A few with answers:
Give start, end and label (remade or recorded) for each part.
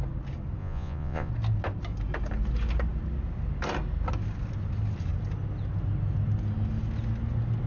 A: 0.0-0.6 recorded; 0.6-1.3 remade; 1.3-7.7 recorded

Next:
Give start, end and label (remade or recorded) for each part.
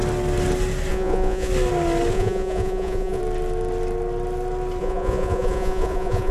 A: 0.0-0.9 recorded; 0.9-1.5 remade; 1.5-2.1 recorded; 2.1-3.2 remade; 3.2-4.8 recorded; 4.8-6.3 remade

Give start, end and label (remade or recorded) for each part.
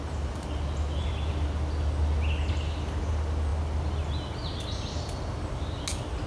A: 0.0-6.3 recorded